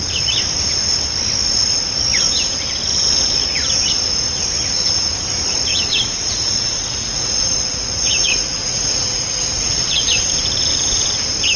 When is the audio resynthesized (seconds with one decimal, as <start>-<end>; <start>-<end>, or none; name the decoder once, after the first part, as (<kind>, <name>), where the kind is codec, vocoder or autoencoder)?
5.7-10.1 (vocoder, Vocos)